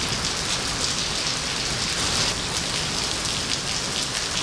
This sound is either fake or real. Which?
real